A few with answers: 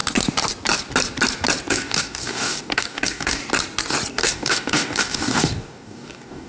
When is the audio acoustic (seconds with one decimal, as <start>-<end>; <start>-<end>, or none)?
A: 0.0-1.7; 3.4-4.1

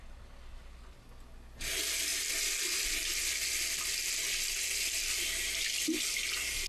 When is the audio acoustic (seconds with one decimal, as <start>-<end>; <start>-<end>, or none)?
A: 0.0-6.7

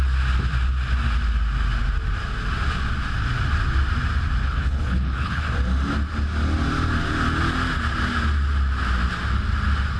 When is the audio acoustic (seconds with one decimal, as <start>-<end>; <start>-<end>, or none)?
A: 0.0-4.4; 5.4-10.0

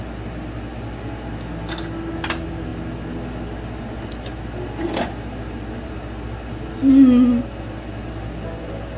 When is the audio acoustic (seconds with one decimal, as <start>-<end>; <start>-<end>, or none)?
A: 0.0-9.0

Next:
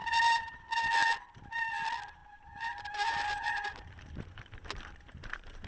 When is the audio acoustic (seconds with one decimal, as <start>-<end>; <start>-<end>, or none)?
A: 0.7-2.2

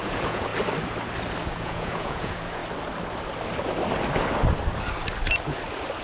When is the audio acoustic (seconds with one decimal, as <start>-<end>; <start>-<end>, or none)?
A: 0.5-1.5; 2.6-6.0

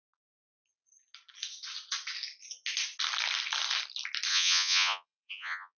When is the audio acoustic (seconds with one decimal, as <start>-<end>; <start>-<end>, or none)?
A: 0.0-4.3

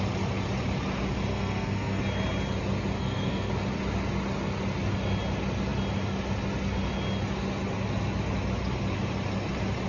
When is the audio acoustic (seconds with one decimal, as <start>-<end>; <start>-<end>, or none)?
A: 0.0-1.3; 2.0-3.0; 3.5-9.9